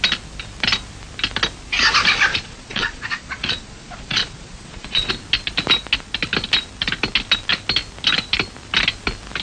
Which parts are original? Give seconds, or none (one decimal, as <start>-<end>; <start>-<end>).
0.0-2.3; 5.1-9.4